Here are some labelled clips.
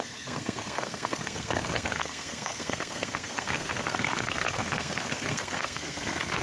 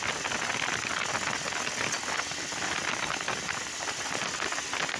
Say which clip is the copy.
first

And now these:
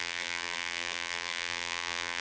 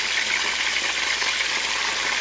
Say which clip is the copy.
first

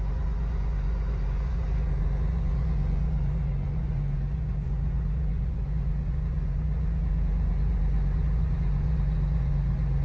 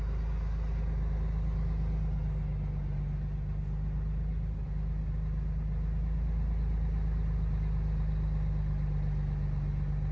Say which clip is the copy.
first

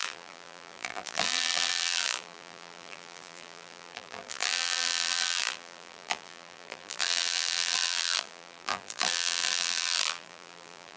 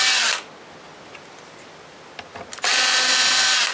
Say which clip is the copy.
first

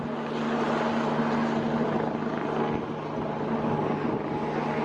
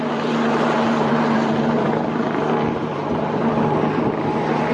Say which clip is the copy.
second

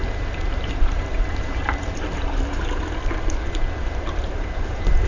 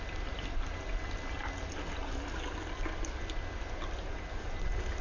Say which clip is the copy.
first